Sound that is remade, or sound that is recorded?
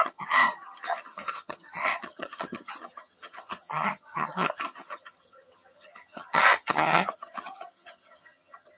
remade